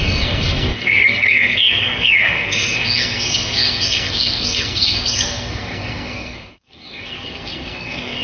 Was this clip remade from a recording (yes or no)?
yes